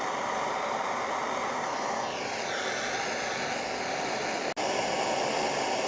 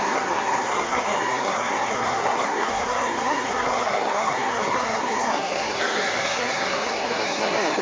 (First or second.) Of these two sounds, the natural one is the first